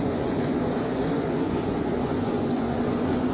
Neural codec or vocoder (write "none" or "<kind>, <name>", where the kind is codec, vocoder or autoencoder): vocoder, Vocos